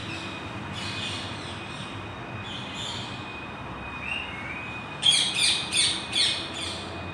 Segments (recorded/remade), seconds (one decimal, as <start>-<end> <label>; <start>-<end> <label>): 0.0-3.3 recorded; 3.3-5.3 remade; 5.3-7.1 recorded